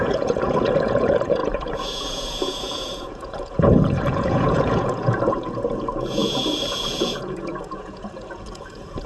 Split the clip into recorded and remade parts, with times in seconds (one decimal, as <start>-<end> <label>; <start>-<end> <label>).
0.0-9.1 remade